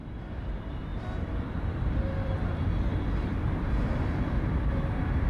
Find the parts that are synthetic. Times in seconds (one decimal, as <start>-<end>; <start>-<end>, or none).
0.0-0.5; 0.9-2.6